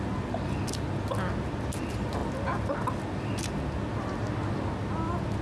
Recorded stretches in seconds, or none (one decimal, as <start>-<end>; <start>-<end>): 0.0-5.4